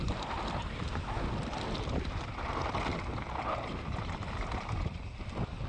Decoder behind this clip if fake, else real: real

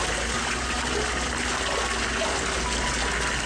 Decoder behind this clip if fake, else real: real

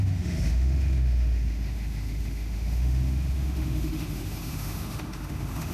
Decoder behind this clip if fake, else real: fake, autoencoder, DAC-VAE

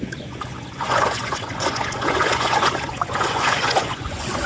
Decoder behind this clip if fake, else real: fake, vocoder, Vocos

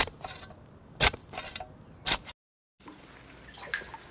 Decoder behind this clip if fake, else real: real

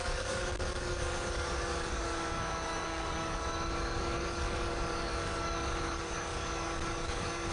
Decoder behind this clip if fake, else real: fake, codec, DAC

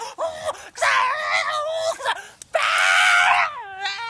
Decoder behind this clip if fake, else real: real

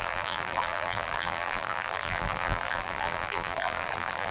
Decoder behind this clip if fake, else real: fake, vocoder, BigVGAN v2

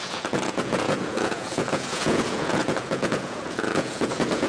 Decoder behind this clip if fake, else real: fake, vocoder, Vocos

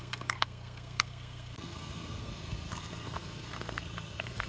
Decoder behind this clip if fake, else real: fake, codec, SNAC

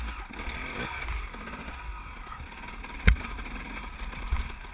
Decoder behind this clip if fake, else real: real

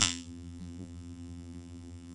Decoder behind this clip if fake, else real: fake, vocoder, BigVGAN v2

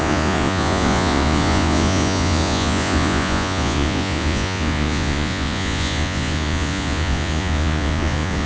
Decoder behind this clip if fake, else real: fake, vocoder, Vocos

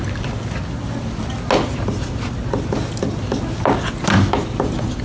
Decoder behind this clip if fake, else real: real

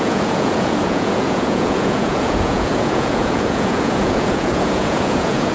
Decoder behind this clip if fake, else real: fake, vocoder, Vocos